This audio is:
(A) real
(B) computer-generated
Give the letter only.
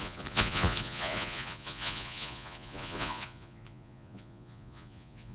B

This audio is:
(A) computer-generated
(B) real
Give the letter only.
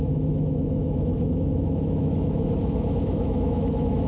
A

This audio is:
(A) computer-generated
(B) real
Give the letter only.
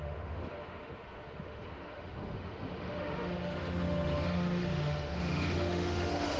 A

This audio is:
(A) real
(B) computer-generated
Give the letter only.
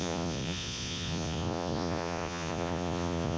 B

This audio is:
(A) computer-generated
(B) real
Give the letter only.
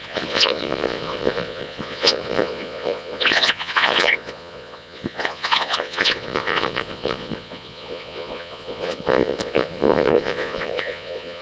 A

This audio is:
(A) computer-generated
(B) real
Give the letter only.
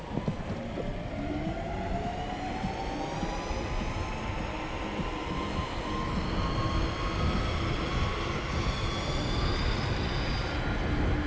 B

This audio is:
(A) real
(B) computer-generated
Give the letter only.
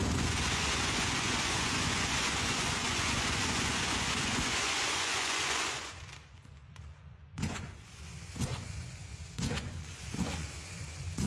B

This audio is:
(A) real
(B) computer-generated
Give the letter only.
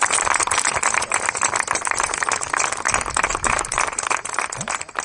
A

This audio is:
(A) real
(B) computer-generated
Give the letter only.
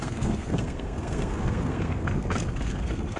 B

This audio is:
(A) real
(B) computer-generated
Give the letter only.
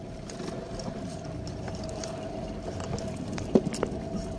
A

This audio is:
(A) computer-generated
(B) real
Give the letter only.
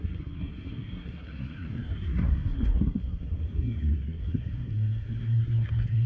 A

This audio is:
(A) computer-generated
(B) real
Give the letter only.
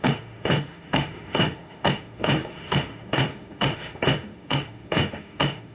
A